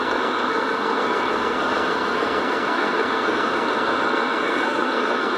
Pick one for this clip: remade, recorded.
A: remade